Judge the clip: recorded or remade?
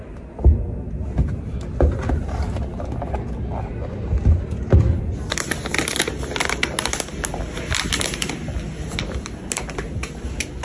recorded